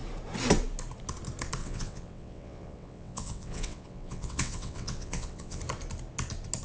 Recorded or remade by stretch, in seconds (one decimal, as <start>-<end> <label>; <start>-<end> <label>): 0.0-1.6 recorded; 1.6-5.6 remade; 5.6-6.6 recorded